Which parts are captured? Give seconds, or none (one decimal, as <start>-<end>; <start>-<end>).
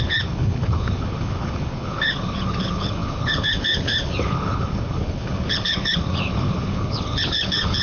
none